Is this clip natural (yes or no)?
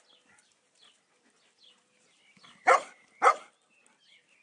yes